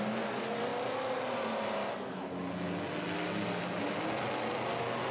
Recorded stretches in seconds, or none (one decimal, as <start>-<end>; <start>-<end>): 0.0-5.1